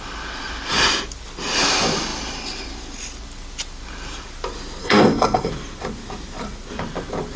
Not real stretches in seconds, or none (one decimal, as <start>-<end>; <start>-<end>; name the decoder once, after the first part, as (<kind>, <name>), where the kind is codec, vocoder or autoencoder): 4.8-5.5 (codec, SNAC)